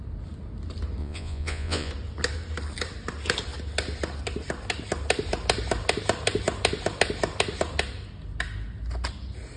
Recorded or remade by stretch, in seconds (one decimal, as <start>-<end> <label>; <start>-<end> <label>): 0.0-1.0 recorded; 1.0-1.9 remade; 1.9-9.6 recorded